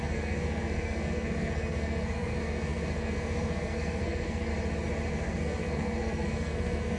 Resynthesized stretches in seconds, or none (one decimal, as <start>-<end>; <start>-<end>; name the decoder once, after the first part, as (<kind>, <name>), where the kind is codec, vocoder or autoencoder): 0.0-4.5 (codec, SNAC); 5.1-7.0